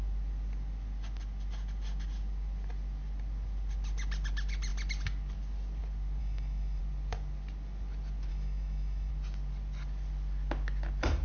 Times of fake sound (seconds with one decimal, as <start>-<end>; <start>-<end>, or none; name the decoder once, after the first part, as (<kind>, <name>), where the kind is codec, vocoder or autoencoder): 6.2-6.8 (autoencoder, DAC-VAE); 8.3-9.1